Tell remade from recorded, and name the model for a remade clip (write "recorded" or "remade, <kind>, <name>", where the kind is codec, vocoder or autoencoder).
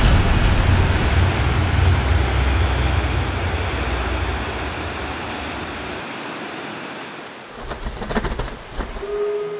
recorded